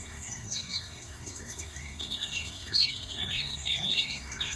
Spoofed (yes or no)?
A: yes